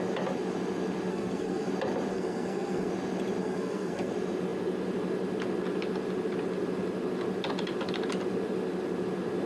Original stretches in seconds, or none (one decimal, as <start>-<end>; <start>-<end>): 0.0-1.1; 1.7-2.1; 2.9-3.4; 4.1-9.5